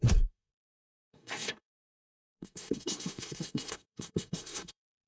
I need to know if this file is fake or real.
fake